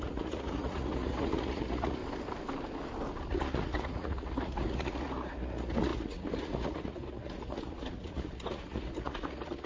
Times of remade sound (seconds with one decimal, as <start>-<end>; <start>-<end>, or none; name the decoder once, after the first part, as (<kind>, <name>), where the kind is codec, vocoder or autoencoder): 0.0-2.0 (vocoder, Vocos); 3.3-9.7